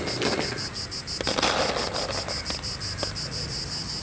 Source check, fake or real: real